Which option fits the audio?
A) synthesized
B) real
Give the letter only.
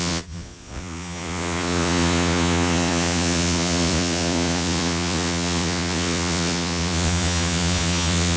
A